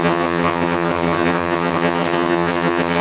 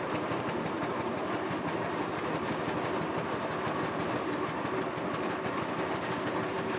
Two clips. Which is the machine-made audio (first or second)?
first